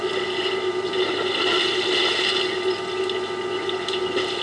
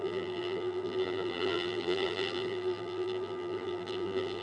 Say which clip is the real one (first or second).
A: first